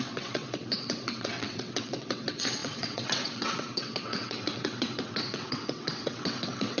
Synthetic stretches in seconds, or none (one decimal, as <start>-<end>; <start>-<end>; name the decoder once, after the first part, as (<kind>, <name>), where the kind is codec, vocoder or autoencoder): 0.0-6.8 (vocoder, WaveNeXt)